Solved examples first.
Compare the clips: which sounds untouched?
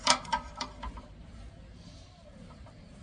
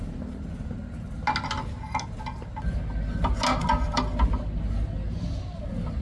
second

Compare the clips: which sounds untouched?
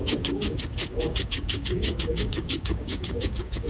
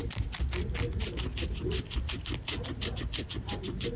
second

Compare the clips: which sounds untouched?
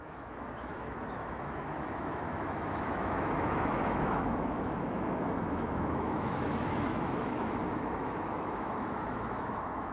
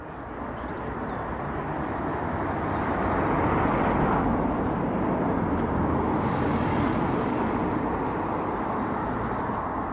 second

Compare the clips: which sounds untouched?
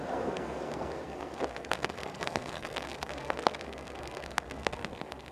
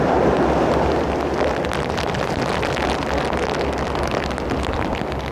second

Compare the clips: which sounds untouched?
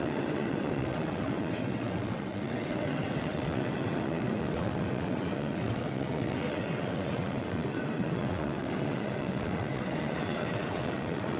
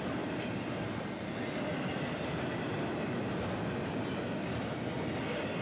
second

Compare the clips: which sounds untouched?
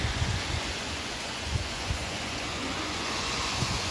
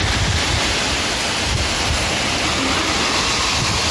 second